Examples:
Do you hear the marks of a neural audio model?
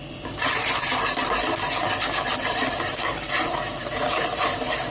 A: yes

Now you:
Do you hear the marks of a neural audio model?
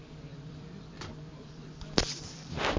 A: yes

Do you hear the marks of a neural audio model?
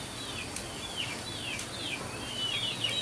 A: no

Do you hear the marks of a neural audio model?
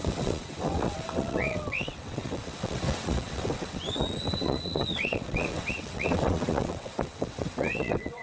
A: yes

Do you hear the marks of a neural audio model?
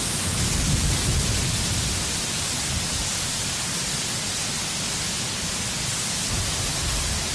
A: no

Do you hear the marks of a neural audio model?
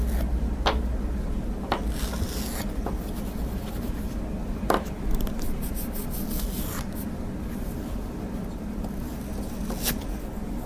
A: no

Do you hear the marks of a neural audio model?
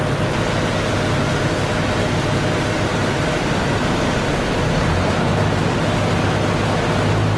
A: no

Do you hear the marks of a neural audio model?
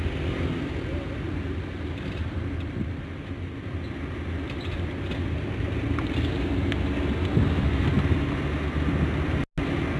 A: no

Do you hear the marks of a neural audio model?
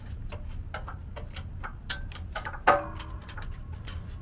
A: no